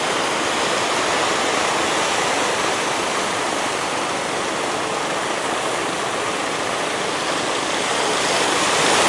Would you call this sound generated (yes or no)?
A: no